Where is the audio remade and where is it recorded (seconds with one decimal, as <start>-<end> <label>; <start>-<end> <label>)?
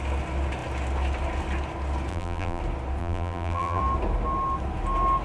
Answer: 0.0-2.1 recorded; 2.1-2.6 remade; 2.6-3.0 recorded; 3.0-3.8 remade; 3.8-5.2 recorded